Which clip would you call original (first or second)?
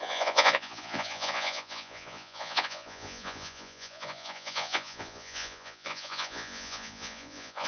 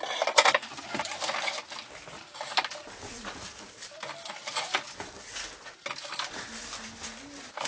second